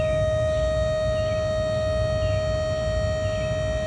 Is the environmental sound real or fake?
real